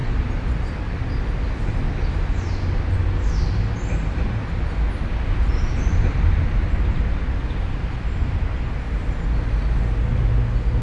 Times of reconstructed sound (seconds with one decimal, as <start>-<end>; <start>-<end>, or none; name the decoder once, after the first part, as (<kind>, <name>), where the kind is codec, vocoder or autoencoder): none